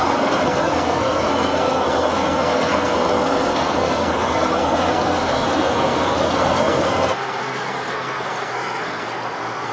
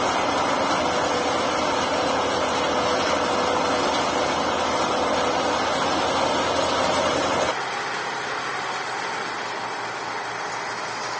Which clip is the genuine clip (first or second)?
second